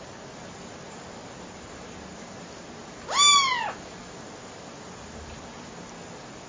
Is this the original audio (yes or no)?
yes